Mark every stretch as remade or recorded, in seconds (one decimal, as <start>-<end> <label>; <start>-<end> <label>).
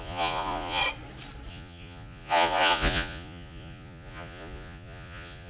0.0-0.8 remade; 0.8-1.5 recorded; 1.5-5.5 remade